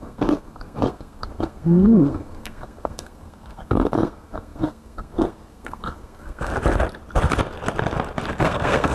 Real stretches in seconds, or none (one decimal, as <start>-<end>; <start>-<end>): 6.5-8.4